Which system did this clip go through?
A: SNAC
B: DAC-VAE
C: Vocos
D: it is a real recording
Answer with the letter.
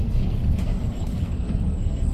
A